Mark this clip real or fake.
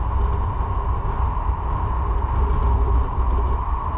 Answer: real